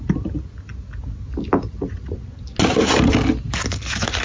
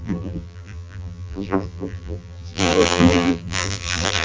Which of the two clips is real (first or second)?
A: first